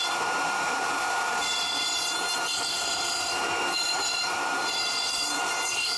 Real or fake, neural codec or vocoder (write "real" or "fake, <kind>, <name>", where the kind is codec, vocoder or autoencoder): fake, vocoder, BigVGAN v2